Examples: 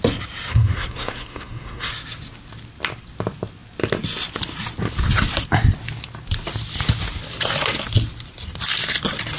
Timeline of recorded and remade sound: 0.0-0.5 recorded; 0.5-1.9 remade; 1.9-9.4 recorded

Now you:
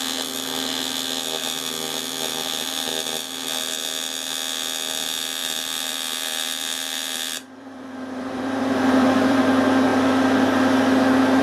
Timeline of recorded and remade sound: 0.0-1.4 recorded; 1.4-3.7 remade; 3.7-5.4 recorded; 5.4-9.4 remade; 9.4-11.4 recorded